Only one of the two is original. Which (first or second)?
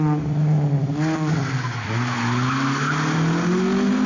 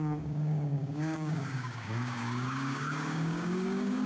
first